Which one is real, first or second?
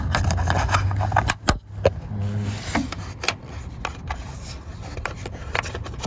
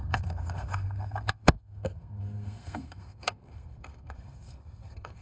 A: first